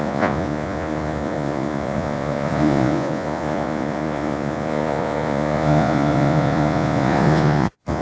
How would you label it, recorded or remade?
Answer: remade